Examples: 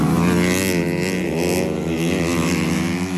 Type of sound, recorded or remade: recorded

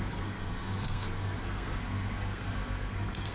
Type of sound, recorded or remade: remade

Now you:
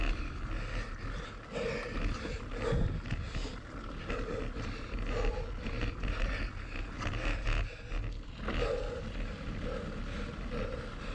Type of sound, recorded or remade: recorded